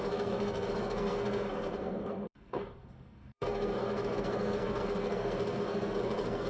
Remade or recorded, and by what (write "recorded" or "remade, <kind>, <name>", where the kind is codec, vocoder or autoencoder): remade, codec, SNAC